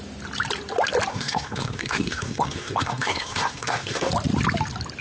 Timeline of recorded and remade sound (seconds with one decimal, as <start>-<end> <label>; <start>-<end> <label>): 0.0-1.1 recorded; 1.1-4.1 remade; 4.1-5.0 recorded